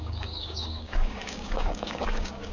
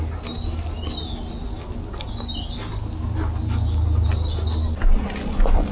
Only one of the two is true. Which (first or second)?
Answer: second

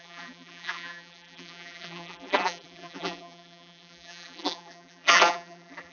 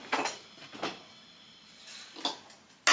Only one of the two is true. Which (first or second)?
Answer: second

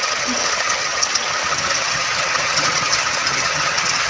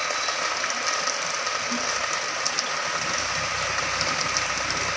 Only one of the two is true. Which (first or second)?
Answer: second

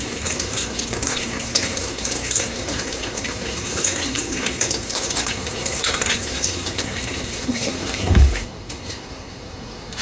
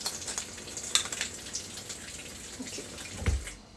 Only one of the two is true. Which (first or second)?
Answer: second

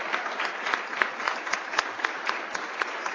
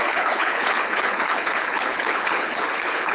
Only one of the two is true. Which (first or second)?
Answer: first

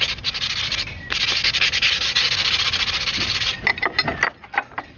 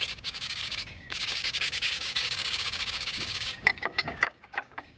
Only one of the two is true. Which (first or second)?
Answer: first